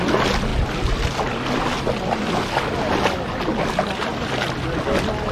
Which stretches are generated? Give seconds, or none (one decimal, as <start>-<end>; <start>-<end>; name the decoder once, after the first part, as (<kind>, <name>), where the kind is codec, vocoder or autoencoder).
none